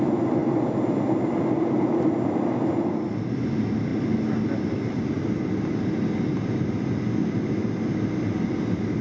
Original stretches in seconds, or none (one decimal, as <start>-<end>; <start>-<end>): 0.0-9.0